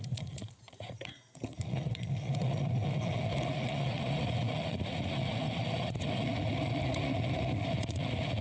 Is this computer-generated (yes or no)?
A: yes